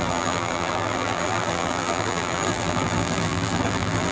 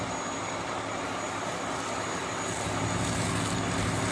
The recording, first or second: second